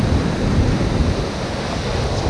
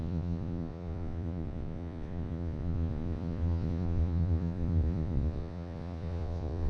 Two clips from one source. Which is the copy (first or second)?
second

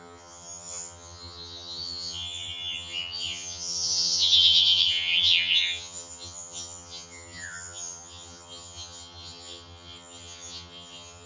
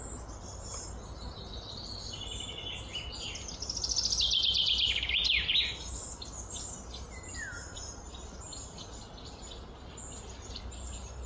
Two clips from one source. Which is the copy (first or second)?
first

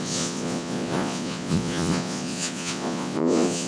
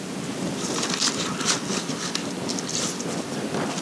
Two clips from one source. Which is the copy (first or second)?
first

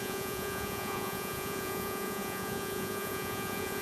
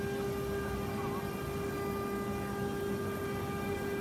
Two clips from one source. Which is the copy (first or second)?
first